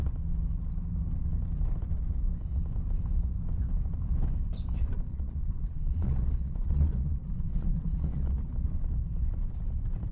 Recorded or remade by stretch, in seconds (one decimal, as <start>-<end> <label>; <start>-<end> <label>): 0.0-5.1 recorded; 5.1-8.4 remade; 8.4-10.1 recorded